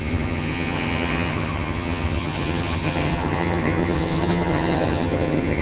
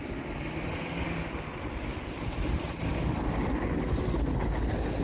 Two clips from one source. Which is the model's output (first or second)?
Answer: first